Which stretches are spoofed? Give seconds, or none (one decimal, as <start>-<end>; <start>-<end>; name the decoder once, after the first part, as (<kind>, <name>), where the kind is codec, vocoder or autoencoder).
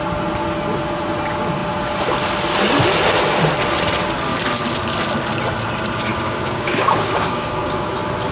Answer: 6.1-7.9 (codec, DAC)